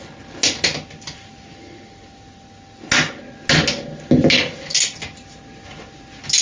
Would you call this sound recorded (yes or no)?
yes